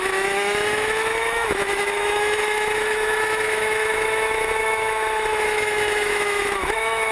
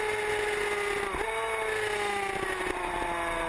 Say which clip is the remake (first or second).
first